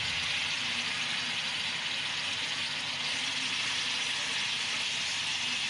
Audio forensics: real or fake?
real